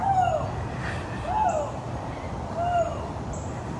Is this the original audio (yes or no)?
yes